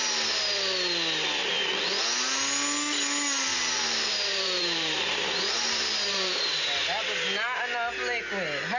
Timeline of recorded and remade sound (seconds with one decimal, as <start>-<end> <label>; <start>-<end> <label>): 0.0-3.5 recorded; 3.5-6.4 remade; 6.4-8.8 recorded